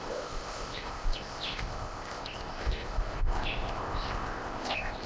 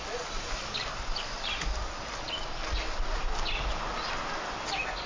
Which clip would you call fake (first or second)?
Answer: first